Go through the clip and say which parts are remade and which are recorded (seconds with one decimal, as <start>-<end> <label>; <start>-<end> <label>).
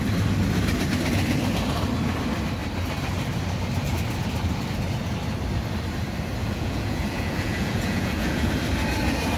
0.0-6.4 recorded; 6.4-8.5 remade; 8.5-9.4 recorded